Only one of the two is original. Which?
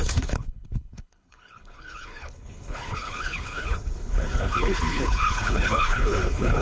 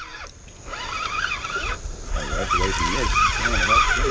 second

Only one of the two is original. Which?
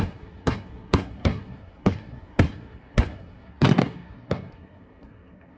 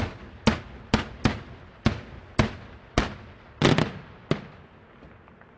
second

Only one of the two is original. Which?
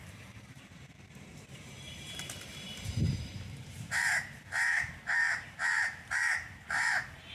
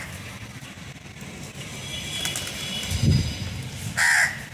second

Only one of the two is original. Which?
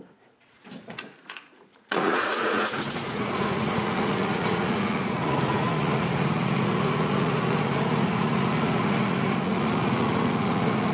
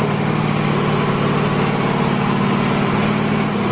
second